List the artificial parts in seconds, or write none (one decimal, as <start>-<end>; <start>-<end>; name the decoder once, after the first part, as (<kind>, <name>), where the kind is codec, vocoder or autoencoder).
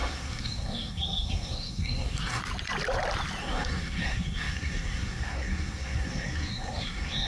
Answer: 0.0-2.4 (codec, SNAC); 3.4-7.3